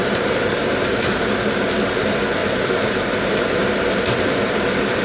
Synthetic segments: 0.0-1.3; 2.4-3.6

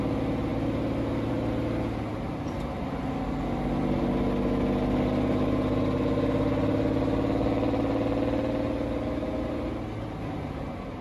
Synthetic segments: none

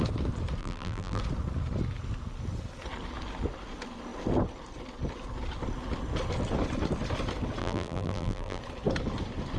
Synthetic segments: 0.6-1.2; 7.6-8.6

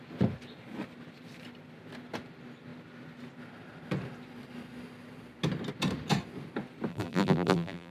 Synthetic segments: 6.9-7.9